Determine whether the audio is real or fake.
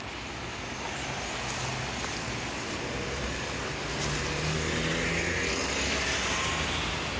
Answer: real